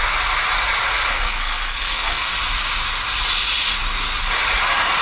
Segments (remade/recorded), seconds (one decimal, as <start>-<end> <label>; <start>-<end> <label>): 0.0-1.1 recorded; 1.1-2.3 remade; 2.3-5.0 recorded